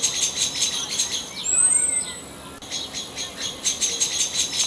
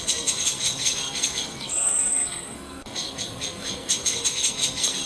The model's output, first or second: second